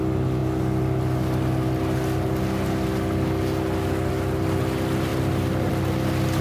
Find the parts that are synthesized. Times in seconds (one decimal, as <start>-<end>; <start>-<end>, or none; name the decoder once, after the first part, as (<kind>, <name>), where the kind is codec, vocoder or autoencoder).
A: none